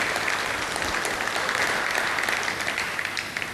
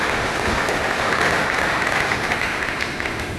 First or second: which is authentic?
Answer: first